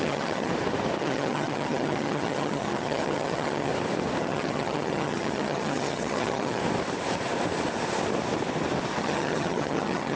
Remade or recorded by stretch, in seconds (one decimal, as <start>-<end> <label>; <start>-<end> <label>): 0.0-0.5 remade; 0.5-1.0 recorded; 1.0-3.7 remade; 3.7-4.2 recorded; 4.2-6.6 remade; 6.6-9.0 recorded; 9.0-10.2 remade